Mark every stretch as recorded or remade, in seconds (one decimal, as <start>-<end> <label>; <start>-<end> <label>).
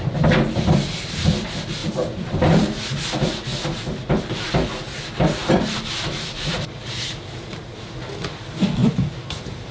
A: 0.0-1.8 recorded; 1.8-3.1 remade; 3.1-5.4 recorded; 5.4-7.7 remade; 7.7-8.8 recorded; 8.8-9.7 remade